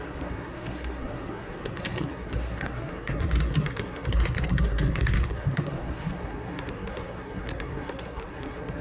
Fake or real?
fake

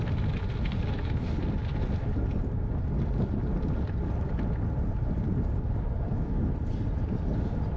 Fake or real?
real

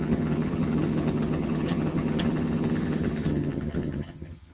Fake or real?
fake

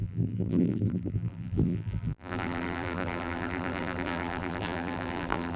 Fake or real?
fake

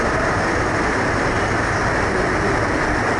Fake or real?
real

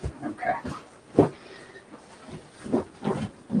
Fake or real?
real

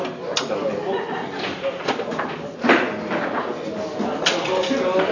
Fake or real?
real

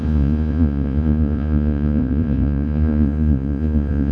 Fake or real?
fake